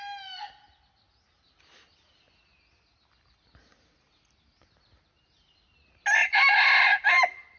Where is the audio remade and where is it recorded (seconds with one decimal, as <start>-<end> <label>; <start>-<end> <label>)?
0.0-7.6 recorded